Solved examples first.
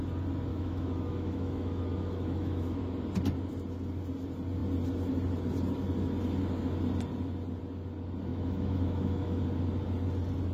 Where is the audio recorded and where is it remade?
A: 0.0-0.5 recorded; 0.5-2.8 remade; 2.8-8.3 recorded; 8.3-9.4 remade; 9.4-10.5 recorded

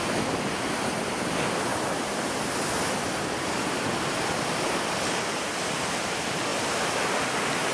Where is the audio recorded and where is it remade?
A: 0.0-7.7 recorded